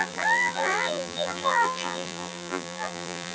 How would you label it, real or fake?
fake